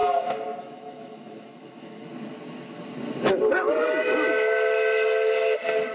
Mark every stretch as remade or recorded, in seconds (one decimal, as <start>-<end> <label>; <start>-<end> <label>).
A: 0.0-0.6 recorded; 0.6-2.1 remade; 2.1-5.9 recorded